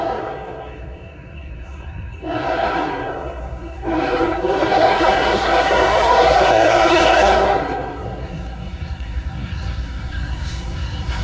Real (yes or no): no